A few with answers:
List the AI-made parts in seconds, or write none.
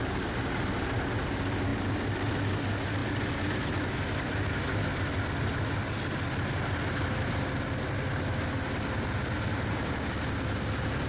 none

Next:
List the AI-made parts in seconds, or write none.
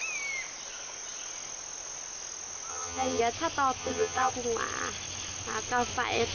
2.7-3.2 (vocoder, HiFi-GAN); 3.8-4.3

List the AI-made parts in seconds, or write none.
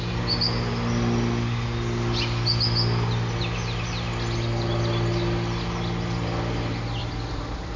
7.0-7.8 (vocoder, BigVGAN v2)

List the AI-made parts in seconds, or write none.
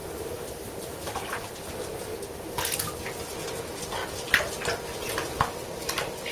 0.0-1.7 (vocoder, BigVGAN v2)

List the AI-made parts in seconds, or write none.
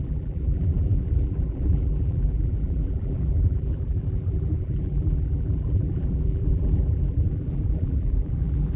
0.0-8.8 (vocoder, BigVGAN v2)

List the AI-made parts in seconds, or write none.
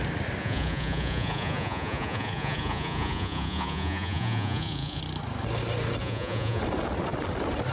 0.4-5.0 (vocoder, Vocos); 6.0-6.6